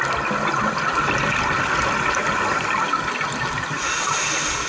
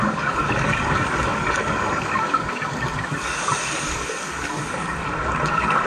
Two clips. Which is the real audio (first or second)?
first